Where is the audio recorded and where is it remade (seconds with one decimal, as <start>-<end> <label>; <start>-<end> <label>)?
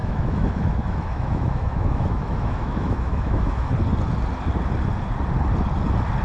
0.0-3.7 remade; 3.7-6.2 recorded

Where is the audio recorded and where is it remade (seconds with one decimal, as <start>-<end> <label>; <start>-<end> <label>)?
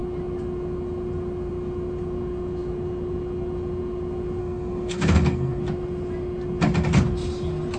0.0-4.4 recorded; 4.4-5.6 remade; 5.6-7.8 recorded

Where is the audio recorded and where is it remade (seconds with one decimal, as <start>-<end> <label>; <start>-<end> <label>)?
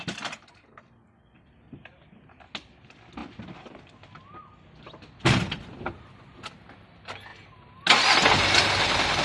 0.0-9.2 recorded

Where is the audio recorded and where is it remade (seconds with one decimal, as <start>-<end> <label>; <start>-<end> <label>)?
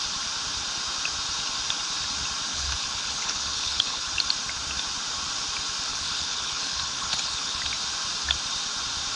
0.0-2.5 recorded; 2.5-4.1 remade; 4.1-5.9 recorded; 5.9-7.6 remade; 7.6-9.2 recorded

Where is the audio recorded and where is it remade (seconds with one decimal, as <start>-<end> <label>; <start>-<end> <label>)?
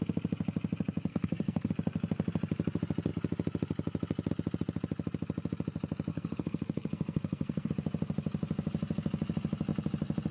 0.0-1.1 recorded; 1.1-1.7 remade; 1.7-6.1 recorded; 6.1-7.7 remade; 7.7-10.3 recorded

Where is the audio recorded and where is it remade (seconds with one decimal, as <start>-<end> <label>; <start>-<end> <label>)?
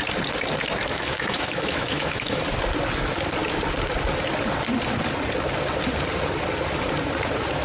0.0-0.9 recorded; 0.9-2.4 remade; 2.4-7.6 recorded